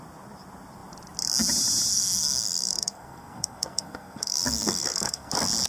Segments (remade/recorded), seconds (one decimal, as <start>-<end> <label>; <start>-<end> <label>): 0.0-1.9 recorded; 1.9-5.3 remade; 5.3-5.7 recorded